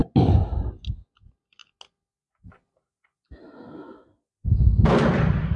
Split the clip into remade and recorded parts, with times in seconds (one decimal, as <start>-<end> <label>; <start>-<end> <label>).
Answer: 0.0-5.6 recorded